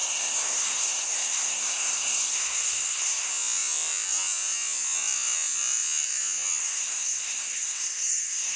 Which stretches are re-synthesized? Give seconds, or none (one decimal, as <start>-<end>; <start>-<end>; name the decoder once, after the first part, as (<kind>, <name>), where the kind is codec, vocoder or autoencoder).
0.0-3.3 (codec, SNAC); 6.6-8.6